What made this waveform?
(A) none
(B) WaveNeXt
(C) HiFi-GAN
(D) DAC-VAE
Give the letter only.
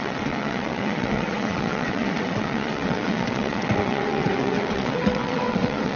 B